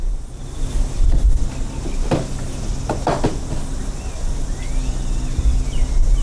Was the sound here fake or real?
real